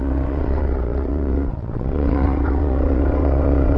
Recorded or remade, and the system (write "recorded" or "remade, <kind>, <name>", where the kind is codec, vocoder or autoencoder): remade, vocoder, WaveNeXt